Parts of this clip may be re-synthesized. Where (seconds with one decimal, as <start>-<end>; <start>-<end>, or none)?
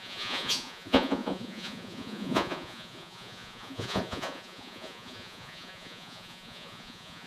0.0-7.3